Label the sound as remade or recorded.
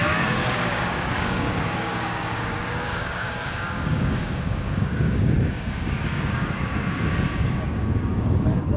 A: remade